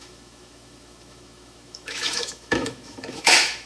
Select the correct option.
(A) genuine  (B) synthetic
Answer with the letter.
B